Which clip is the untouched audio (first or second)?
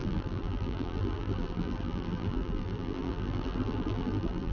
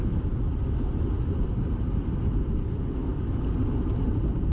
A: second